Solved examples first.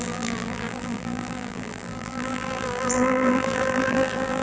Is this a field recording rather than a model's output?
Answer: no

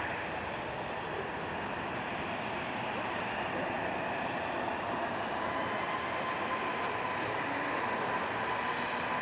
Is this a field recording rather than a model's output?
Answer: no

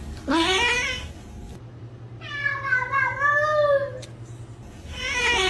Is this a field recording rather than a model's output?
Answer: yes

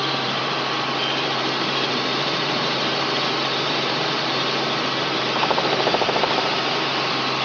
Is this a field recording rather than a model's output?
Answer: no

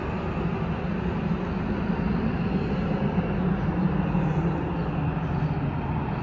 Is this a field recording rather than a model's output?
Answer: yes